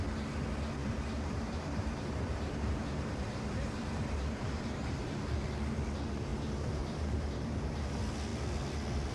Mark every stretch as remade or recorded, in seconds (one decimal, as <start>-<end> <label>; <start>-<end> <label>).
0.0-0.8 recorded; 0.8-5.1 remade; 5.1-6.3 recorded; 6.3-7.9 remade; 7.9-9.1 recorded